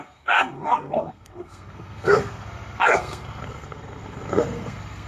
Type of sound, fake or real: fake